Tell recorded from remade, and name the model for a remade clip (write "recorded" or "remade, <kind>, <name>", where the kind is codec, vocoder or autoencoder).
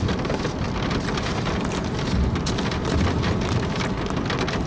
recorded